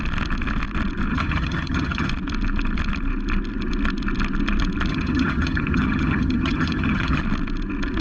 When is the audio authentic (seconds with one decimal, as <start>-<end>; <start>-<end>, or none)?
0.0-1.1; 2.1-4.9; 7.2-8.0